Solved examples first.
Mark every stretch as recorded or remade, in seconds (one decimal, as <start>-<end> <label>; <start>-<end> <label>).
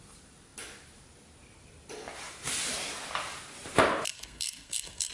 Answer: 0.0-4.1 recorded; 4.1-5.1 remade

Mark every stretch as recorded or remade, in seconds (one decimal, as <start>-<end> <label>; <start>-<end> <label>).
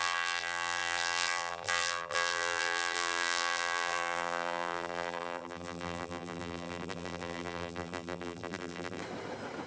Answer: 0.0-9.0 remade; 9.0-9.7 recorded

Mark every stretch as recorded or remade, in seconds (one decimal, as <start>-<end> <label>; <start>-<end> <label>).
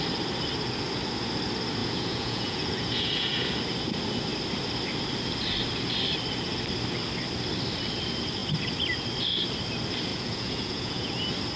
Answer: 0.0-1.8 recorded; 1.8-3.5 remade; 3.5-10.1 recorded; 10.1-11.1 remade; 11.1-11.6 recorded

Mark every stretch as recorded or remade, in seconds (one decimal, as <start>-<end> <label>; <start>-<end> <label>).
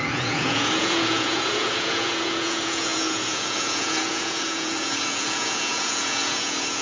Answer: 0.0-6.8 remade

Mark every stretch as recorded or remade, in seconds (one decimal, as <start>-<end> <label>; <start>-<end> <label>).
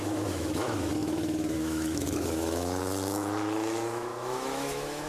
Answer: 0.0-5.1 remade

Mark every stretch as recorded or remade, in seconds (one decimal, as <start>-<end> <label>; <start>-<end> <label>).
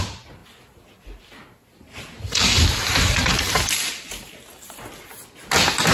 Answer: 0.0-5.9 recorded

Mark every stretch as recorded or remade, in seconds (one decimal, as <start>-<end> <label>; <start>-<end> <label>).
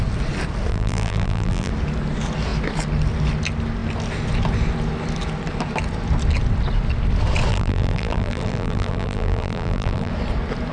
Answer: 0.0-0.7 recorded; 0.7-1.7 remade; 1.7-7.5 recorded; 7.5-10.1 remade; 10.1-10.7 recorded